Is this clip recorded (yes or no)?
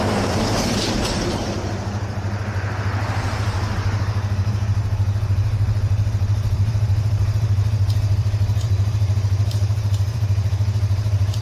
no